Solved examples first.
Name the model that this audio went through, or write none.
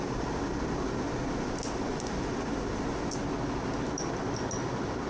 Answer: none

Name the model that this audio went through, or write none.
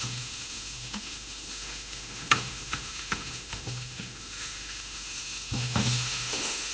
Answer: autoencoder, DAC-VAE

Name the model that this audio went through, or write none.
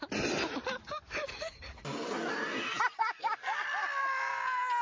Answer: none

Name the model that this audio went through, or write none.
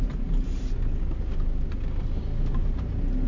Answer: none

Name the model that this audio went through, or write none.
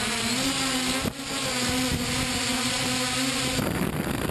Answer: none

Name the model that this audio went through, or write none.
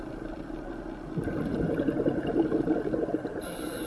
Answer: none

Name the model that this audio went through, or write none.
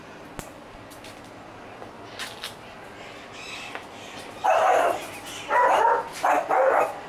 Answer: none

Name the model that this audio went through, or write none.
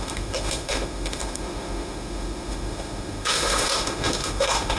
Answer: autoencoder, DAC-VAE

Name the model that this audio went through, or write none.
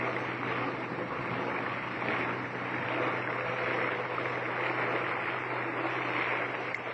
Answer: none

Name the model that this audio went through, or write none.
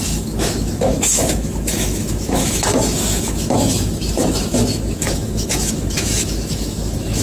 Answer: autoencoder, DAC-VAE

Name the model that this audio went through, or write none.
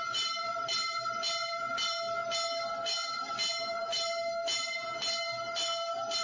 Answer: none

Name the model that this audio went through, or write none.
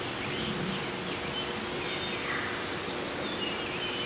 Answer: none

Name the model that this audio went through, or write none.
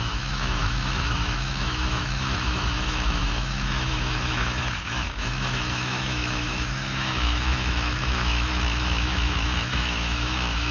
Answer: autoencoder, DAC-VAE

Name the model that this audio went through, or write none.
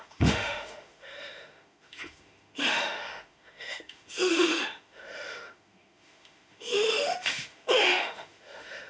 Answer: autoencoder, DAC-VAE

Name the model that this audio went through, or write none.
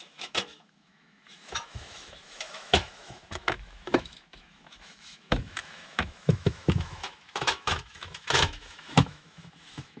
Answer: autoencoder, DAC-VAE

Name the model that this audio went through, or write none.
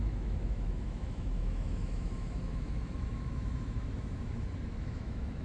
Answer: autoencoder, DAC-VAE